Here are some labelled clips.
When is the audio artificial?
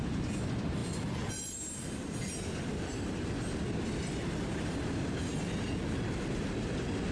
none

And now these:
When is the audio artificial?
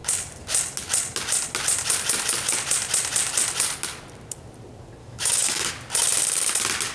5.0-5.7 (autoencoder, DAC-VAE)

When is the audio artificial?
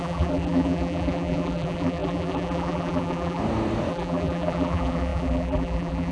0.0-3.4 (vocoder, BigVGAN v2); 3.9-6.1